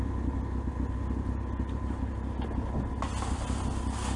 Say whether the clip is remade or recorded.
recorded